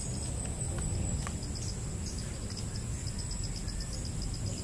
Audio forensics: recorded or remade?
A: recorded